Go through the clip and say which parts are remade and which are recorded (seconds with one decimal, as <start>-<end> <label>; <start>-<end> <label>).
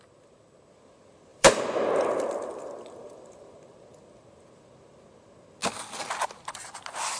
0.0-1.3 recorded; 1.3-1.9 remade; 1.9-2.5 recorded; 2.5-3.6 remade; 3.6-7.2 recorded